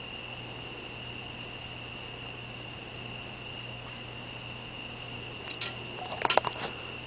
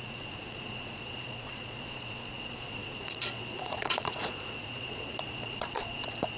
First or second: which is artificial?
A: second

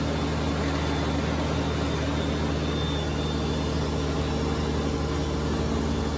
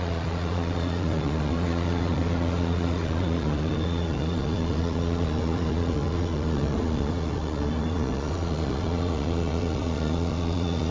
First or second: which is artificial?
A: second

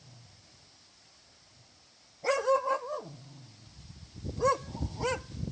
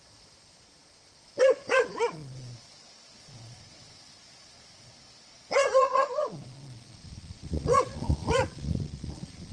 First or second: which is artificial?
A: second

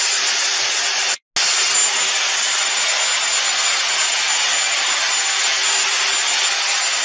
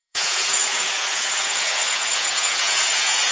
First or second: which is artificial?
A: second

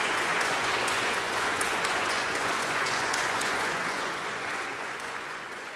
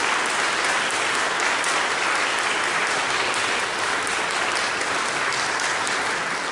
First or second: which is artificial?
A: first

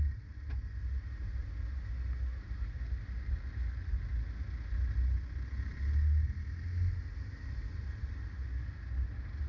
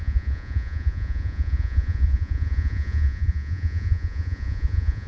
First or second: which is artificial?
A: second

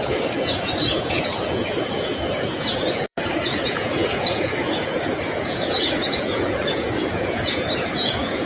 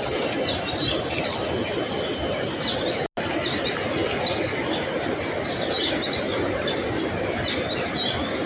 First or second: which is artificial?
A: first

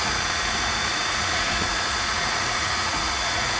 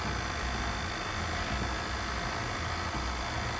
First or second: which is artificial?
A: first